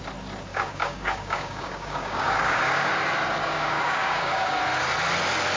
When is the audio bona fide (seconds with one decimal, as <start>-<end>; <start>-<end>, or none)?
0.0-0.5; 2.9-3.4; 4.6-5.6